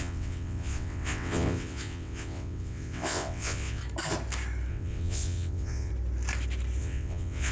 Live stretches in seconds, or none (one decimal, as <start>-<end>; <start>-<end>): 3.8-4.7; 5.9-6.8

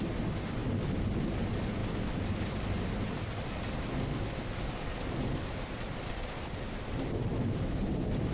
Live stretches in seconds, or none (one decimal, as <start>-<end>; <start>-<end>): 0.0-8.3

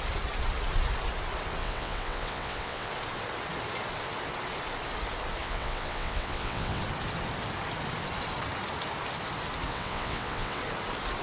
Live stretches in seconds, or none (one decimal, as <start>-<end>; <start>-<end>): 0.0-1.6; 2.9-5.4; 6.8-9.7; 10.6-11.2

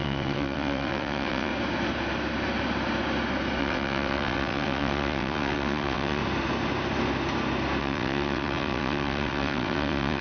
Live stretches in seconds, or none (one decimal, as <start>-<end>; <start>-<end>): 1.5-3.6; 6.2-7.8